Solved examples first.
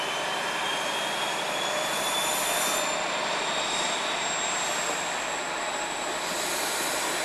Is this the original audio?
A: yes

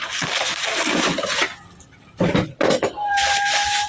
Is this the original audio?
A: yes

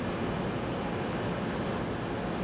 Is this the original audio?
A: yes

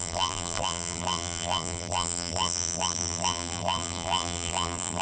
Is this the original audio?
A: no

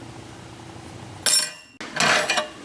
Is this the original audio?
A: yes